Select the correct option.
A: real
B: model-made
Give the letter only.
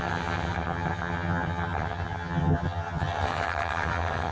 B